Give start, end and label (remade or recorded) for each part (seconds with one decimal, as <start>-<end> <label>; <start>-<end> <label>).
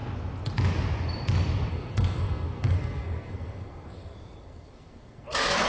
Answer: 0.0-1.7 recorded; 1.7-5.7 remade